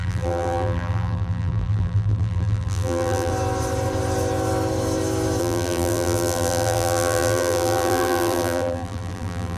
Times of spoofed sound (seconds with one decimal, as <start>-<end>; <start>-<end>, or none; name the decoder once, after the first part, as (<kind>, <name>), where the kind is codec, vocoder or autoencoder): 0.0-3.3 (vocoder, BigVGAN v2); 5.4-9.6